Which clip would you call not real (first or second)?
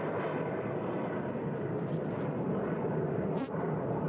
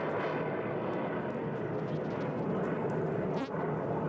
first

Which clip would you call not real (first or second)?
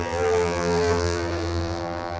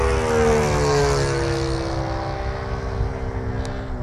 first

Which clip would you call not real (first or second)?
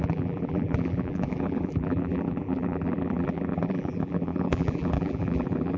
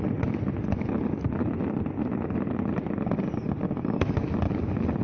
first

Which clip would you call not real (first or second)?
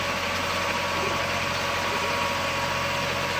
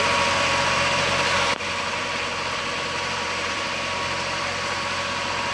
second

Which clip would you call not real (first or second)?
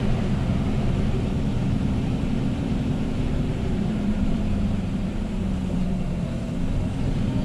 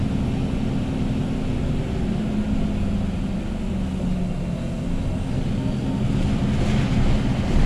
first